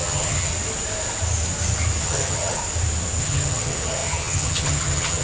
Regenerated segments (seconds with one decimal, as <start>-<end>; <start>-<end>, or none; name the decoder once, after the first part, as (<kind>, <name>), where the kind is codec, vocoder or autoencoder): 0.0-0.5 (vocoder, HiFi-GAN); 2.0-2.6; 3.2-5.2

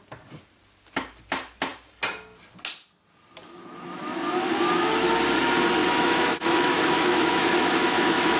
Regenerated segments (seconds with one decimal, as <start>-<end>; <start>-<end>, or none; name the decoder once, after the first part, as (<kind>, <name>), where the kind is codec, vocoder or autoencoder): 5.8-8.4 (autoencoder, DAC-VAE)